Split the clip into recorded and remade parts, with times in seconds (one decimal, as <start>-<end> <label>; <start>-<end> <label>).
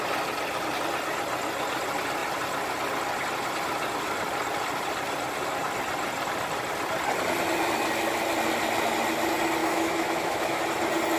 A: 0.0-9.6 recorded; 9.6-10.6 remade; 10.6-11.2 recorded